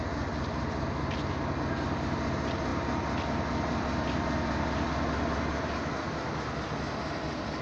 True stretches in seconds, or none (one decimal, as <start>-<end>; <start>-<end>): 0.0-7.6